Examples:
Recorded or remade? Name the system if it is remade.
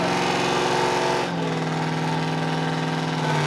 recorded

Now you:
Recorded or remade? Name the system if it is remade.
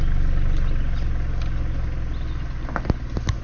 recorded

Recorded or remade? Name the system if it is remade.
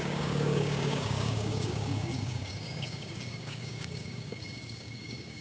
remade, codec, DAC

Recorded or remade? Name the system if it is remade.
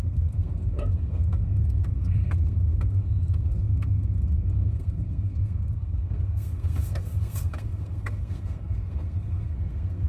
remade, codec, SNAC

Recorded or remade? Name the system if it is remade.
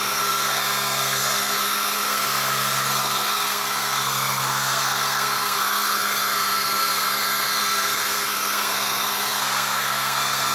remade, codec, SNAC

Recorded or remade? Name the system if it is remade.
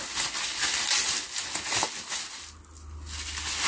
recorded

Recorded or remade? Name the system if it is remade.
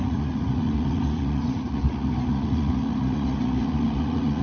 remade, vocoder, Vocos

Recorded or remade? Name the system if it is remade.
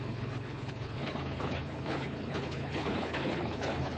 remade, codec, HILCodec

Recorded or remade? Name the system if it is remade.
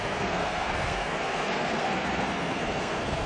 remade, codec, SNAC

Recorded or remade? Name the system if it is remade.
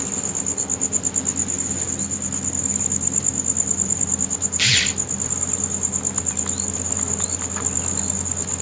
recorded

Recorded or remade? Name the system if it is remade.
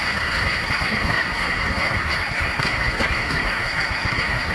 remade, codec, SNAC